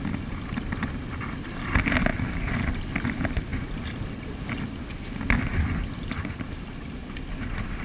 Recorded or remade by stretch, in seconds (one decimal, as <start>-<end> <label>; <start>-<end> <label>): 0.0-7.8 recorded